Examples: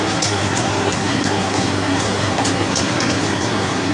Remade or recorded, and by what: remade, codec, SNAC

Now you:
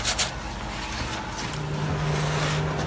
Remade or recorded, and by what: recorded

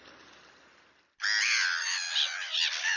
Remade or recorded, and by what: recorded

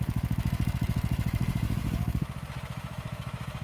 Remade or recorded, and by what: remade, autoencoder, DAC-VAE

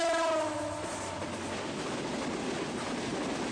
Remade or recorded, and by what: recorded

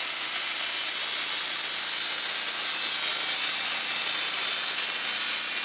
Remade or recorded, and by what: recorded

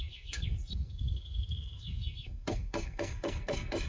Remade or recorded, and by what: remade, codec, SNAC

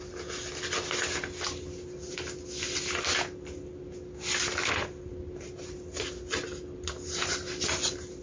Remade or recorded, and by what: recorded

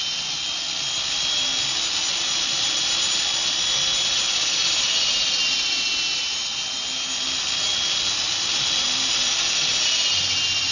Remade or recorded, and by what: recorded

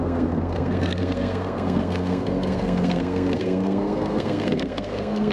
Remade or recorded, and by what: remade, codec, SNAC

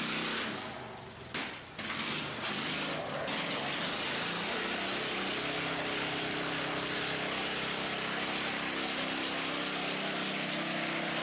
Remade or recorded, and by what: recorded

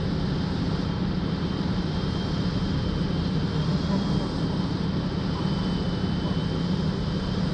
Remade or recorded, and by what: recorded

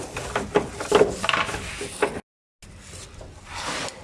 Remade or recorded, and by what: recorded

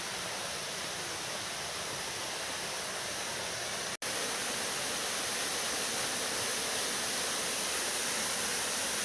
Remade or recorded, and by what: recorded